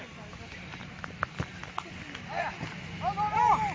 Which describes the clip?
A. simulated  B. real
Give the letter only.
B